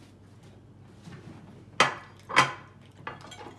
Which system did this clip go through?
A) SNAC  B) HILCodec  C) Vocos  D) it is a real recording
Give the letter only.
D